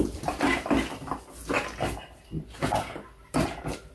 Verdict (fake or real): real